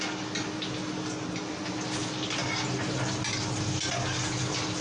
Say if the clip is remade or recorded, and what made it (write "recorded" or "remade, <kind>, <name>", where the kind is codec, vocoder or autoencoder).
recorded